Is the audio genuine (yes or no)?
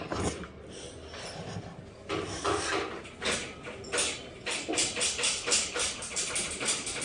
yes